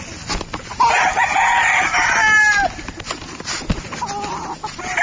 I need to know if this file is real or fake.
real